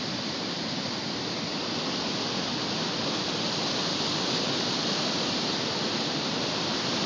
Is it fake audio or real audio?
fake